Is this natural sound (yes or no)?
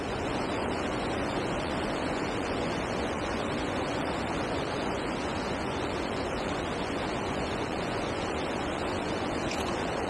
no